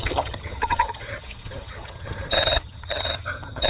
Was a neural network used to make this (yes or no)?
yes